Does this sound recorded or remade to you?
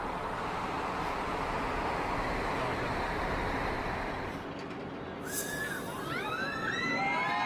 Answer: recorded